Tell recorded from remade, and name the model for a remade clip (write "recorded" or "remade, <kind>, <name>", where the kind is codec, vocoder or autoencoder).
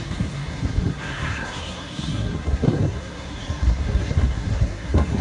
remade, codec, SNAC